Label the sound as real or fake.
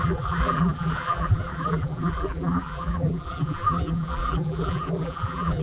fake